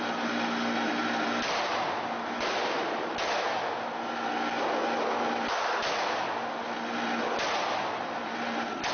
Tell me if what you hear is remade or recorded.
recorded